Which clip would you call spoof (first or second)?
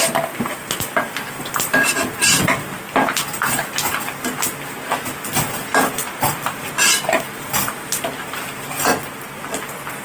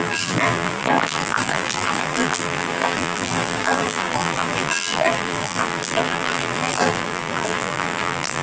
second